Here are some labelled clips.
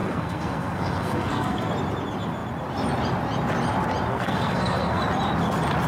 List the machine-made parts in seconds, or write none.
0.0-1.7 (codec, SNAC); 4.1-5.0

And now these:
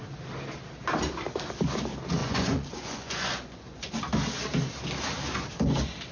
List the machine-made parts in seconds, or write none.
2.2-3.9 (vocoder, Vocos)

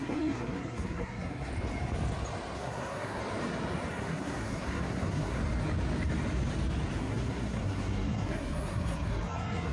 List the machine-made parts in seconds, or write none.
0.0-1.5 (codec, SNAC); 2.6-3.2; 3.9-5.4; 7.0-9.7